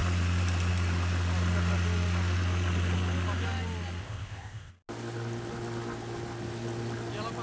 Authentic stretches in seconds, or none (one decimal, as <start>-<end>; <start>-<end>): 0.0-4.0; 4.7-7.4